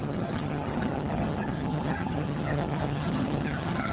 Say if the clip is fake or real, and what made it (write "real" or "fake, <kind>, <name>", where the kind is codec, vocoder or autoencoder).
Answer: fake, vocoder, HiFi-GAN